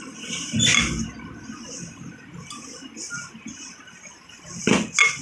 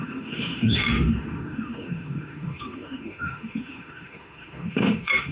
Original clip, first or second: first